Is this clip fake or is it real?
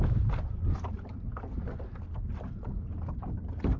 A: real